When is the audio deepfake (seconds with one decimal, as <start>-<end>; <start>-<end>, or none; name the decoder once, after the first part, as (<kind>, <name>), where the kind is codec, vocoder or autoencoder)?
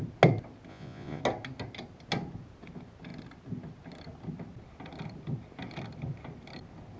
0.7-1.2 (vocoder, Vocos)